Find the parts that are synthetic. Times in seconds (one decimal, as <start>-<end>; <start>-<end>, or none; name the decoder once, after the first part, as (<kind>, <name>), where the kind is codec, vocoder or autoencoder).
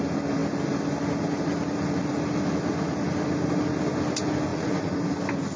4.5-5.0 (vocoder, Vocos)